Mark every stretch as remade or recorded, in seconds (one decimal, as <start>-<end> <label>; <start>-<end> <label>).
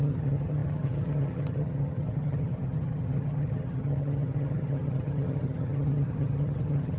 0.0-7.0 remade